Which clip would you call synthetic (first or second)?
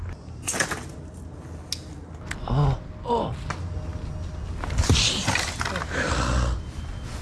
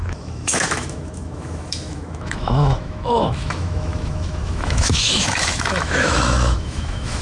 second